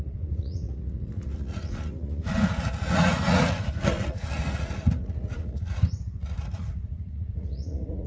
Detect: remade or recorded remade